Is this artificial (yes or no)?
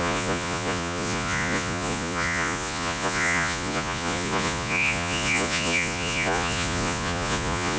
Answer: yes